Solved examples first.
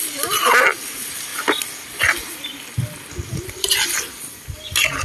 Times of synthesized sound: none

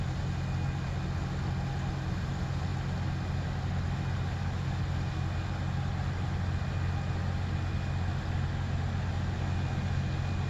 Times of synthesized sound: none